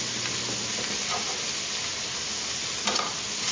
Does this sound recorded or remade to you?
recorded